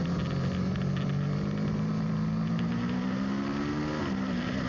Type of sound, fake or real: real